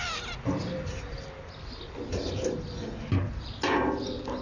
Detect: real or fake real